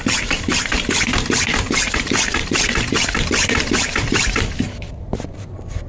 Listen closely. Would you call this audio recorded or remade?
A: remade